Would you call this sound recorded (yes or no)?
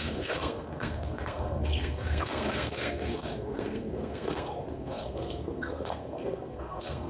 no